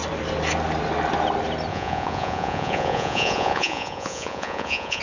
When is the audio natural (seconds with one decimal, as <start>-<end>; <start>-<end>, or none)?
0.0-1.7